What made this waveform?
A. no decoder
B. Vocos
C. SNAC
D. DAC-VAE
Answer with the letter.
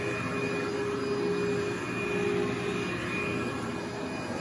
A